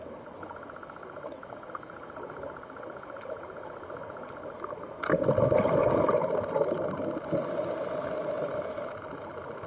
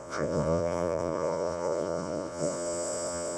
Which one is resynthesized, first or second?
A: second